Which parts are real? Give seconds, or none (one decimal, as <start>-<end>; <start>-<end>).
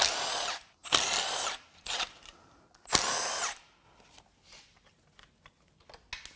0.0-6.4